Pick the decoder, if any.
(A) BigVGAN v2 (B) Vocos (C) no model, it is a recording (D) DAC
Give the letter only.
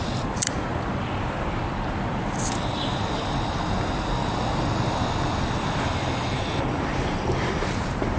A